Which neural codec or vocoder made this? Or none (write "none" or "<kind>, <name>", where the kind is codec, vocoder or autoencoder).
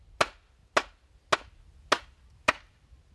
none